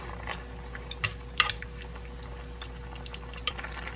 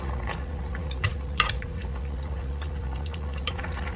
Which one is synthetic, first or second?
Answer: second